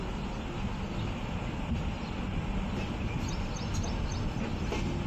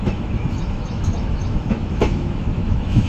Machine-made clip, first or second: second